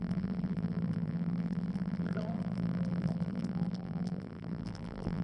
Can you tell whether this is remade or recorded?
remade